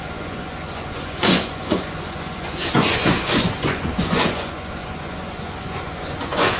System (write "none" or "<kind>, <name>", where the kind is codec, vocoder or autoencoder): vocoder, Vocos